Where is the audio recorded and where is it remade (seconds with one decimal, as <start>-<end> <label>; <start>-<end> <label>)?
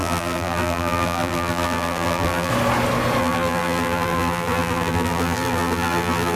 0.0-2.5 remade; 2.5-3.2 recorded; 3.2-6.4 remade